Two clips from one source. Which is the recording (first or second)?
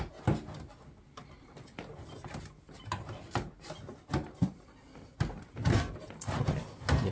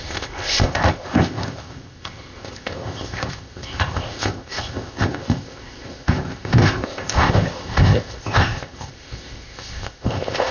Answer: first